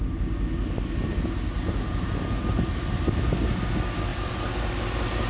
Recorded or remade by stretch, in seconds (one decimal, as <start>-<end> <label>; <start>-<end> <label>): 0.0-4.1 recorded; 4.1-4.7 remade; 4.7-5.3 recorded

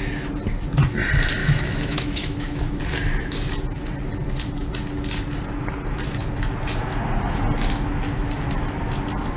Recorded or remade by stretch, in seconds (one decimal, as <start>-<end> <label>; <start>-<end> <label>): 0.0-1.4 recorded; 1.4-2.8 remade; 2.8-9.4 recorded

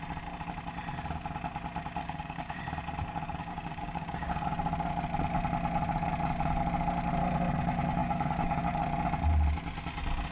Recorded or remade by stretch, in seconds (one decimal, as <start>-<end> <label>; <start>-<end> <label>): 0.0-2.0 recorded; 2.0-2.6 remade; 2.6-3.4 recorded; 3.4-4.4 remade; 4.4-8.0 recorded; 8.0-8.8 remade; 8.8-10.3 recorded

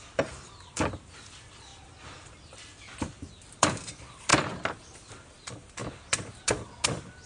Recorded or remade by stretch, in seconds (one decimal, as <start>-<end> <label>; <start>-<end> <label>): 0.0-4.3 remade; 4.3-5.1 recorded; 5.1-5.8 remade; 5.8-7.3 recorded

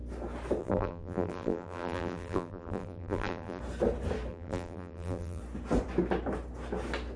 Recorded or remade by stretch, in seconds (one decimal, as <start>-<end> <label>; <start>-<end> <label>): 0.0-0.6 recorded; 0.6-3.6 remade; 3.6-4.3 recorded; 4.3-5.4 remade; 5.4-7.2 recorded